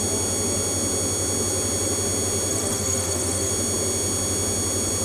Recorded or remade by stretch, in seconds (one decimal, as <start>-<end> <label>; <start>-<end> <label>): 0.0-2.5 recorded; 2.5-3.5 remade; 3.5-5.0 recorded